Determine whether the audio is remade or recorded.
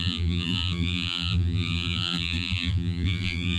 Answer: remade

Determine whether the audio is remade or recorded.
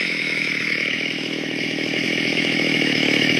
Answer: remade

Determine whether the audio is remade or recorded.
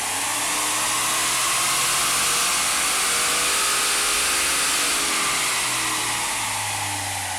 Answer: recorded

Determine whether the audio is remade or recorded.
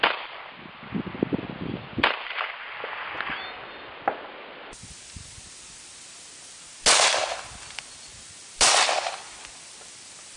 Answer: recorded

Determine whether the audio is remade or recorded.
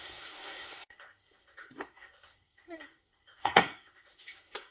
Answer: remade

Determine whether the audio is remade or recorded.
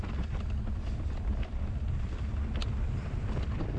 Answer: remade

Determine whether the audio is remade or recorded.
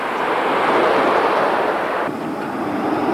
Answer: remade